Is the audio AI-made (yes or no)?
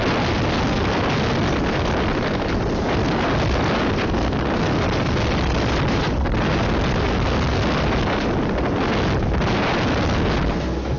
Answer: no